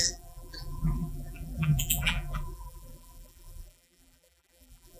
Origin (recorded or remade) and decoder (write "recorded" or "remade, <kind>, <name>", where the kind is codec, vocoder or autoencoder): remade, vocoder, BigVGAN v2